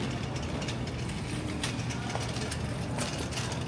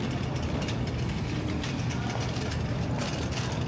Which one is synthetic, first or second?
second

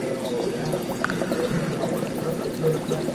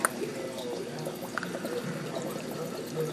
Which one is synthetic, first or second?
first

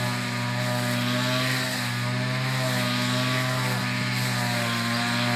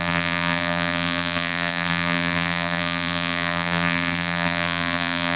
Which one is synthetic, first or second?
second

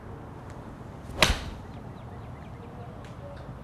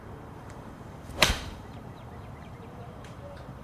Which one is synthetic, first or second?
second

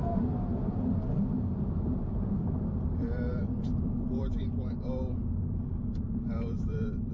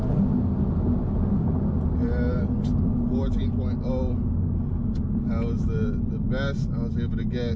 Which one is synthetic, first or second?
first